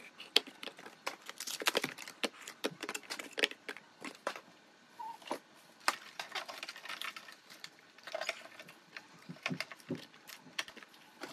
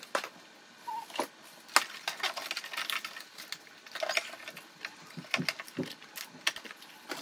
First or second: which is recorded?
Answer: second